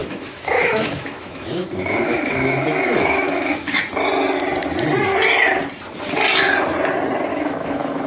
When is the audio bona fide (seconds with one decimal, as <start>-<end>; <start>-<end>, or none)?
3.8-7.3